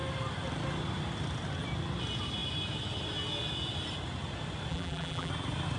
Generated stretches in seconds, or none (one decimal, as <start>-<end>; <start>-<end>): 4.7-5.3